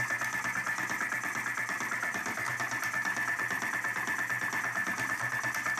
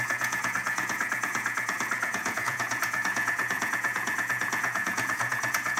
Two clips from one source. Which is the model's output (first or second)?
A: second